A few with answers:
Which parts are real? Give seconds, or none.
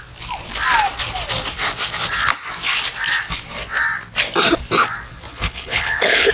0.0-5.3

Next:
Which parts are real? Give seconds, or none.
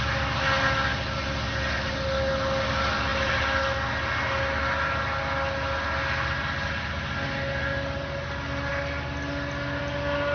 0.0-10.3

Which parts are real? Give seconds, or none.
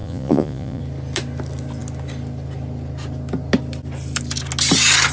0.8-5.1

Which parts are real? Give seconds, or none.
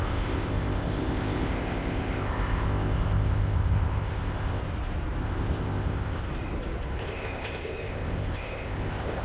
4.6-5.2; 6.2-7.0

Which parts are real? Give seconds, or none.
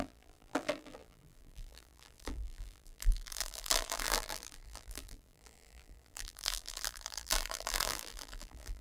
none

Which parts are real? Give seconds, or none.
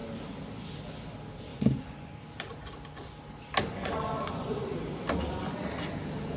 0.0-1.5; 2.1-3.7; 4.7-6.4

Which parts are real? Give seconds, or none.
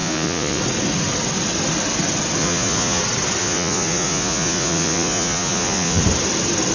0.6-2.4; 3.0-3.4; 6.0-6.7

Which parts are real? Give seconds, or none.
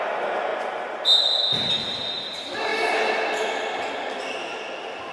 0.0-5.1